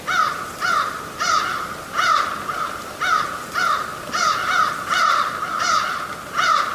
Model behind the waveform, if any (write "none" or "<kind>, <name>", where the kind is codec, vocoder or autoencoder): none